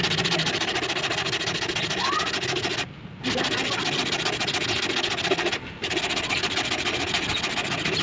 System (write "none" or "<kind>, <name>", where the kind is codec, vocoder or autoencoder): none